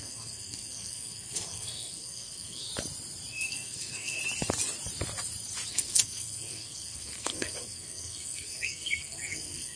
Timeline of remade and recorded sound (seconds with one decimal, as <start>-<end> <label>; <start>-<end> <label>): 0.0-2.7 remade; 2.7-3.3 recorded; 3.3-4.2 remade; 4.2-5.7 recorded; 5.7-9.8 remade